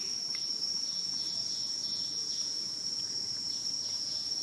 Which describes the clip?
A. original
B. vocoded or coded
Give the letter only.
B